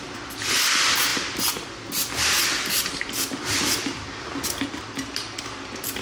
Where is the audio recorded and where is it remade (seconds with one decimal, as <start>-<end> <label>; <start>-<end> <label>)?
0.0-6.0 recorded

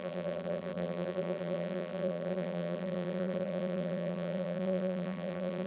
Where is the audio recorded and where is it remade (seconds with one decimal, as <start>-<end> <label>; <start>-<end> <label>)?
0.0-5.7 remade

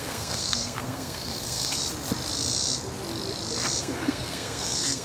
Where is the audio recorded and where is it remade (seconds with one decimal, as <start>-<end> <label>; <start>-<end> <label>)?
0.0-1.8 remade; 1.8-3.8 recorded; 3.8-5.0 remade

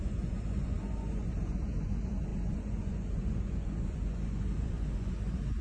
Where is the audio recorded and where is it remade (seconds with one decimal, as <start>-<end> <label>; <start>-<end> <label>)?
0.0-5.6 remade

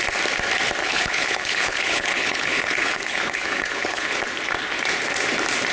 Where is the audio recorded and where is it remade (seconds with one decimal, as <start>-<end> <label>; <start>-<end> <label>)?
0.0-0.8 recorded; 0.8-4.2 remade; 4.2-5.7 recorded

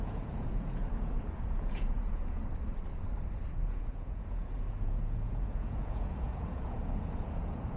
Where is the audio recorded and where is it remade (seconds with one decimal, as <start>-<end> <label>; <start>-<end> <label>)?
0.0-2.4 remade; 2.4-3.5 recorded; 3.5-7.8 remade